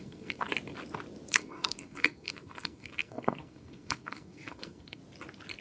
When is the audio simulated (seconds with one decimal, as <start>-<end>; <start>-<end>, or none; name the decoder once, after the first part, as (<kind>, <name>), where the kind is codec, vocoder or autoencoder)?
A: 0.0-0.5 (codec, SNAC); 1.3-5.0